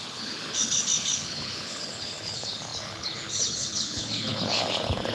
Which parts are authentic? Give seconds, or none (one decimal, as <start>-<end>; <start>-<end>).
none